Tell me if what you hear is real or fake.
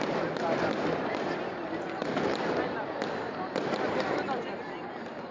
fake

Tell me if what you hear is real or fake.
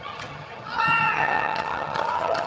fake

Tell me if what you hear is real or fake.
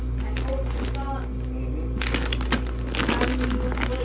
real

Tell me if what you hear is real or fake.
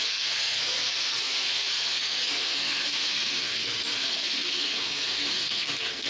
fake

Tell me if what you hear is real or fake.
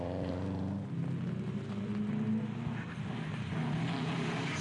real